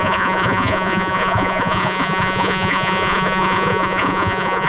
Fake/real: fake